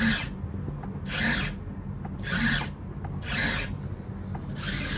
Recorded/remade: recorded